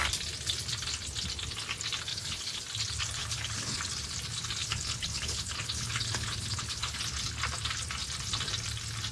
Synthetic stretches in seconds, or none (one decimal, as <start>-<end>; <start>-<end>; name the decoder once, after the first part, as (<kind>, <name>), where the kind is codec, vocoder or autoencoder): 2.1-2.6 (codec, HILCodec); 3.2-3.8; 4.6-7.0